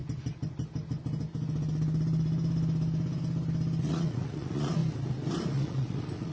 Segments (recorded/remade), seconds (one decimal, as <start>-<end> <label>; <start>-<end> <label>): 0.0-3.8 recorded; 3.8-4.8 remade; 4.8-5.5 recorded; 5.5-6.3 remade